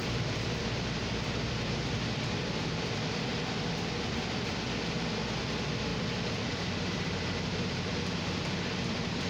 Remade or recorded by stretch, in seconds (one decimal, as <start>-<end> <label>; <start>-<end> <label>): 0.0-3.3 remade; 3.3-5.4 recorded; 5.4-9.3 remade